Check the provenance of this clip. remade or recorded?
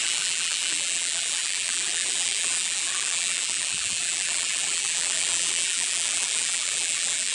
remade